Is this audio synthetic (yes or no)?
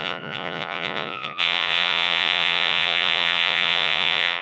yes